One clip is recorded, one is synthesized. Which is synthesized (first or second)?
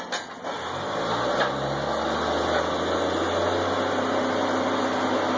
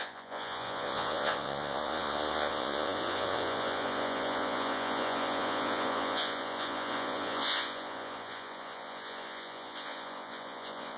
second